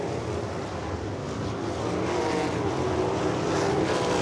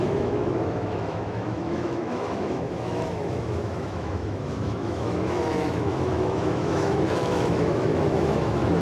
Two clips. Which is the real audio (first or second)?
first